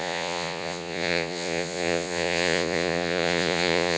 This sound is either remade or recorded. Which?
remade